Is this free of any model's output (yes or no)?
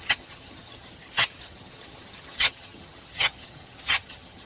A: no